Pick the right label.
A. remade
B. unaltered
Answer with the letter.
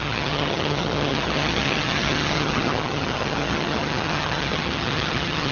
A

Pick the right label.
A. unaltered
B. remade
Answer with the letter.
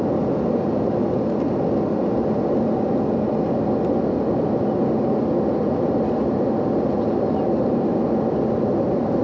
A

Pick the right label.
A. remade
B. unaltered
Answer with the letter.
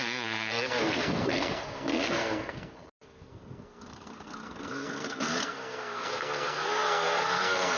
A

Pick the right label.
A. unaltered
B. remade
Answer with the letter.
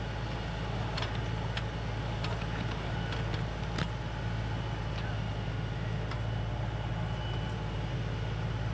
A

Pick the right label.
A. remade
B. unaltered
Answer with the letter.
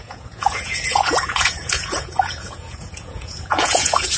A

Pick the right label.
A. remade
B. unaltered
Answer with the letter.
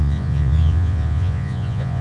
A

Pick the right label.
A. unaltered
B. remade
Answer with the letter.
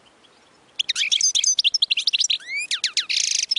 A